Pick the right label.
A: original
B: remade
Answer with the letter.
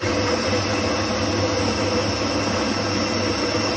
A